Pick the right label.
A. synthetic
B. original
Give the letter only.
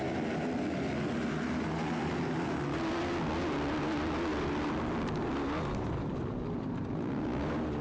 B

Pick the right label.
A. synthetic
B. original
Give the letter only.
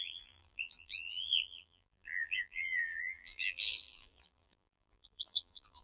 A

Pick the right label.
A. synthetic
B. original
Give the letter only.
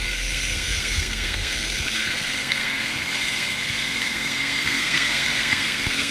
A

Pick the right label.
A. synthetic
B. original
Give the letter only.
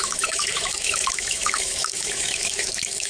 A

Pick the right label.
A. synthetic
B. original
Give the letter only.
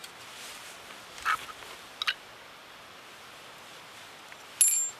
B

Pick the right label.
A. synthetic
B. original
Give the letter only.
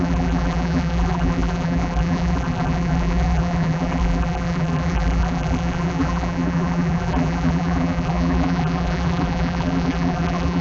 A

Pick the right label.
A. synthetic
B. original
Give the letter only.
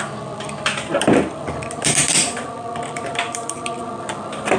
A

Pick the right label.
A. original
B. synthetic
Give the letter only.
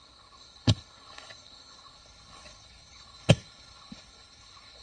B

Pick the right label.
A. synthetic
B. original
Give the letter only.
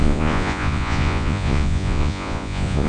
A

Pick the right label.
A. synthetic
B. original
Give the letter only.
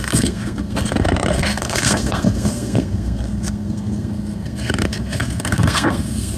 A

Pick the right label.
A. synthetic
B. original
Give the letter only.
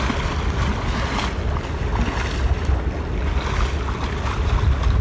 B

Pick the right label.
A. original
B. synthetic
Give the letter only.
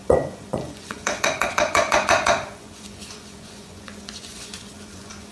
B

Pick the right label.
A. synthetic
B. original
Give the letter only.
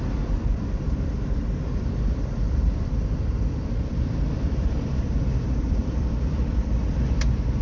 A